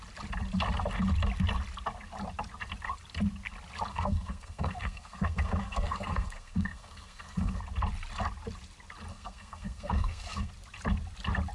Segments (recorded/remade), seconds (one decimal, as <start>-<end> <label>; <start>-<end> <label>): 0.0-3.9 recorded; 3.9-7.6 remade; 7.6-9.1 recorded; 9.1-10.5 remade; 10.5-11.5 recorded